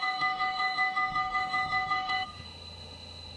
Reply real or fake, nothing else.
fake